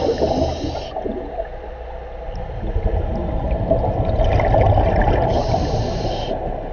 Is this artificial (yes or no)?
no